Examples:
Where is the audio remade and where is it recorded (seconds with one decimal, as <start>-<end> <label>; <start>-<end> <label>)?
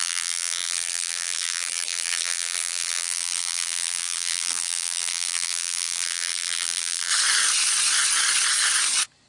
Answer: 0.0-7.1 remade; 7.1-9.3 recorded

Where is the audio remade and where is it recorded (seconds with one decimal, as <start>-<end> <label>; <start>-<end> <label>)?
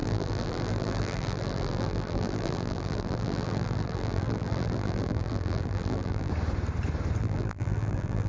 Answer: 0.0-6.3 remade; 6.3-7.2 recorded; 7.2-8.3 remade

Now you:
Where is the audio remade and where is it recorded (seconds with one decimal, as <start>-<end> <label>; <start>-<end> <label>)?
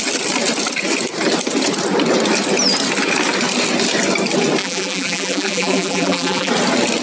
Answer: 0.0-4.6 recorded; 4.6-6.5 remade; 6.5-7.0 recorded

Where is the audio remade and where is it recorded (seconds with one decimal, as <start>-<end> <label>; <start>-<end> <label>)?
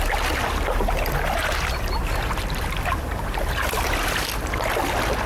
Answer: 0.0-1.4 recorded; 1.4-4.2 remade; 4.2-5.3 recorded